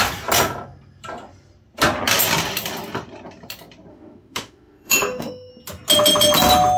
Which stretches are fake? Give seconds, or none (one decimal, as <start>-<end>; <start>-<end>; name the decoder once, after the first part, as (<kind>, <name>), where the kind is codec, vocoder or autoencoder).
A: 3.9-5.5 (autoencoder, DAC-VAE)